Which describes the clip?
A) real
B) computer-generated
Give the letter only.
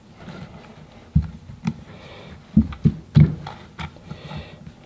A